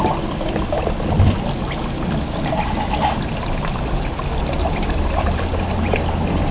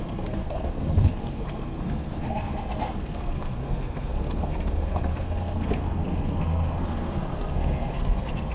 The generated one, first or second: second